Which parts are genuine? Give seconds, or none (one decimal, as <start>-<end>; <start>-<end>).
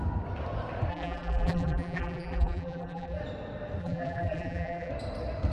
0.0-0.9; 3.2-3.8; 4.9-5.5